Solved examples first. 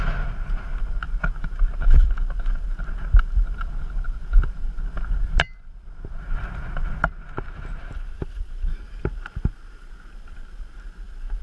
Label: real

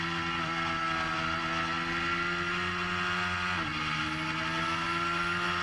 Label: real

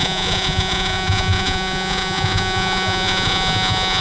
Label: fake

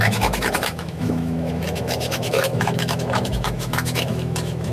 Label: fake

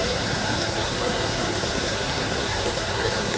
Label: fake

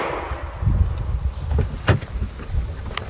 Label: real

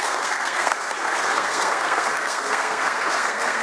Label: fake